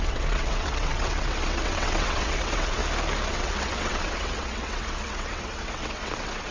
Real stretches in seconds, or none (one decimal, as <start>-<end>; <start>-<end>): 2.8-3.3